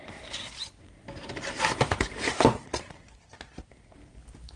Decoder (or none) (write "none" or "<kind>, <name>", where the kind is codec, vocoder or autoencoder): vocoder, BigVGAN v2